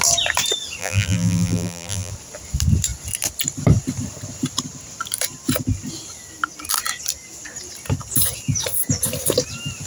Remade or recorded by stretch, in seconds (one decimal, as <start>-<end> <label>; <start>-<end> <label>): 0.0-0.8 recorded; 0.8-2.1 remade; 2.1-9.9 recorded